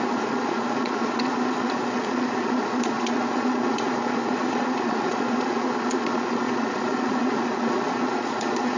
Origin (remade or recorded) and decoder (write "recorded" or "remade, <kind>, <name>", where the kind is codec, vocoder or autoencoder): remade, vocoder, Vocos